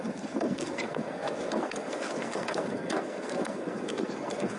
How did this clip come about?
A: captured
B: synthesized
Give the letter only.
B